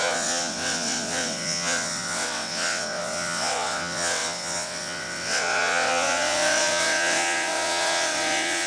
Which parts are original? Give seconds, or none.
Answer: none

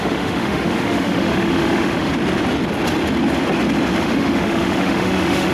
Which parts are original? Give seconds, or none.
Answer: 2.1-4.0

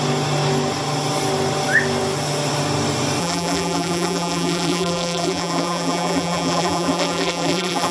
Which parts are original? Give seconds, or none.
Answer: 0.0-3.2

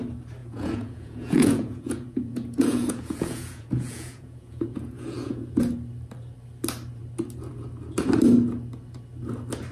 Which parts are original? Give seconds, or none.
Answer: 0.0-0.4; 5.6-9.7

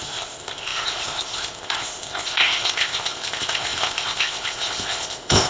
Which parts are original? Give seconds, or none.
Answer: none